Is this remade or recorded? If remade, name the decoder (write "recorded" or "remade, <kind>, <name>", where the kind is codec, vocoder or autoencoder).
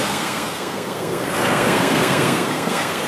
remade, codec, SNAC